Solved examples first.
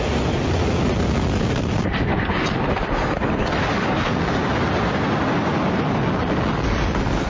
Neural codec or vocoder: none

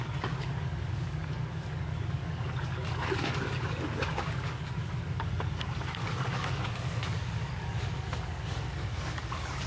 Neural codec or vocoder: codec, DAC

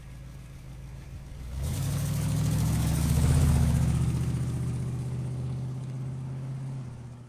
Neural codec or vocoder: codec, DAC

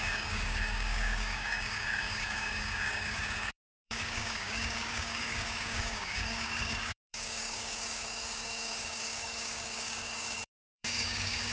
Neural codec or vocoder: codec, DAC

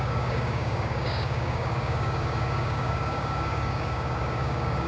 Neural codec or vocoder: codec, DAC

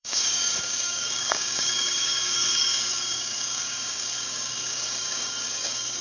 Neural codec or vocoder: codec, DAC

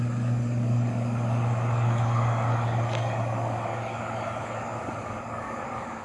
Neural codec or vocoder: codec, DAC